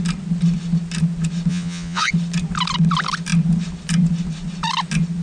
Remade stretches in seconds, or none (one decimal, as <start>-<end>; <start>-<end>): 1.5-2.1